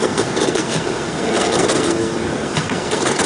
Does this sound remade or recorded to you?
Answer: remade